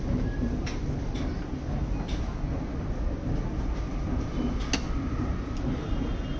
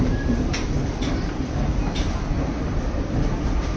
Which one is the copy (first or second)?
second